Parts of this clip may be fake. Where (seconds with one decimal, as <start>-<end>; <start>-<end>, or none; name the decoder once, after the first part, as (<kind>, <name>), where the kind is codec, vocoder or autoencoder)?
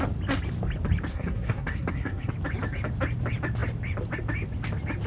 1.1-2.3 (codec, SNAC)